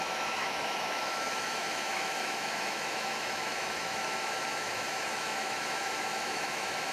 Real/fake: fake